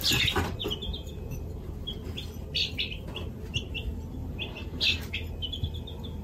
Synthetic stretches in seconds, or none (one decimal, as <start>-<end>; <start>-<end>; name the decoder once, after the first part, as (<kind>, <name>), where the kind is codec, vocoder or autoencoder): 0.6-1.5 (vocoder, BigVGAN v2); 4.2-5.0